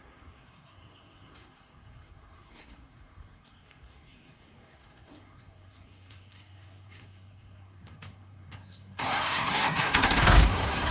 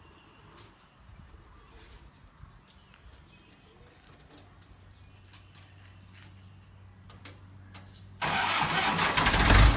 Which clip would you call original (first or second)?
second